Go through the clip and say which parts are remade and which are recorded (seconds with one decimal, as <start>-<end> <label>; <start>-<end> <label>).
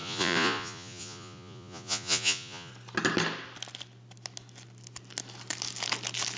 0.0-2.7 remade; 2.7-6.4 recorded